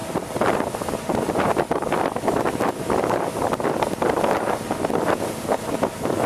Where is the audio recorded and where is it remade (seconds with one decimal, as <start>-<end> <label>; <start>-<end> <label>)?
0.0-3.2 remade; 3.2-6.3 recorded